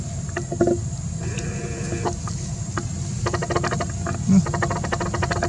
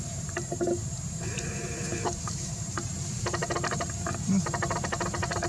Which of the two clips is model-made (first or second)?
second